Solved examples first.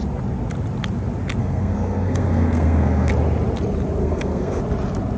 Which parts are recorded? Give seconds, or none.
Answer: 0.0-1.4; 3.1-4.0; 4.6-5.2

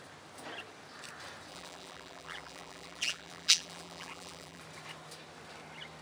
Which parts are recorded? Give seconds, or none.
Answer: 0.0-1.5; 4.6-6.0

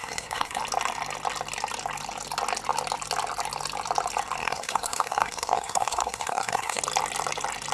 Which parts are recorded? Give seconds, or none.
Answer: 0.6-4.4; 6.8-7.7